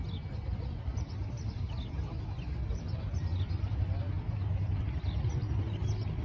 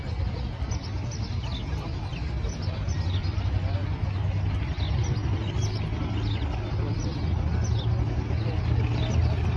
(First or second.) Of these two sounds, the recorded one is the second